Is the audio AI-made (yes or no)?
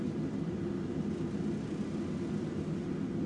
no